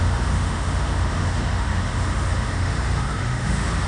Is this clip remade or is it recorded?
remade